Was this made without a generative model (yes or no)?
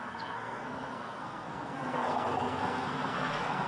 no